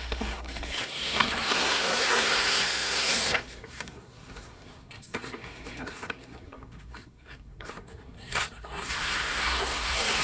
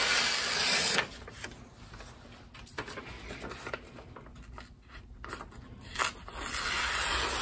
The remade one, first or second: first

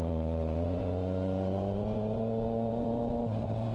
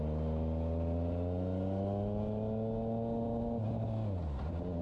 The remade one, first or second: first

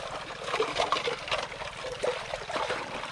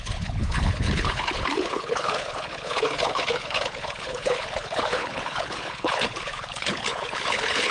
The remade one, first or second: second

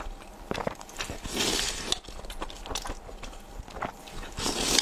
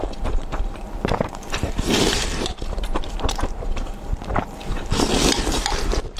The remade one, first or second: second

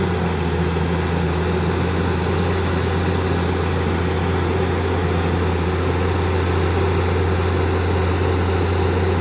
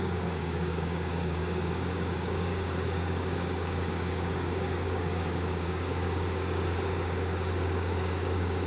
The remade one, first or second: second